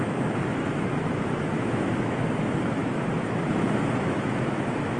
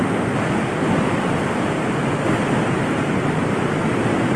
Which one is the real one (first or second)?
second